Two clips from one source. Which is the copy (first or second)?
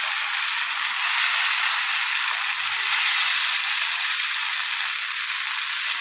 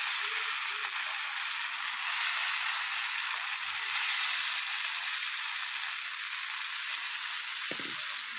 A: first